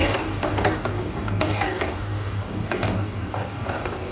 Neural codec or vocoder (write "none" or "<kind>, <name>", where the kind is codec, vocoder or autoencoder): codec, DAC